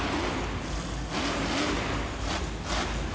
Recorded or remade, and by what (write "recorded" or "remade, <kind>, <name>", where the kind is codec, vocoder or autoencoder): recorded